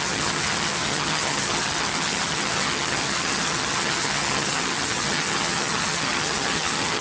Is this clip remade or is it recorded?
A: remade